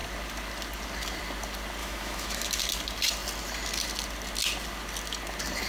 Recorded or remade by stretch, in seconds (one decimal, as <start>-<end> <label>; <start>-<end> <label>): 0.0-1.8 recorded; 1.8-2.6 remade; 2.6-5.7 recorded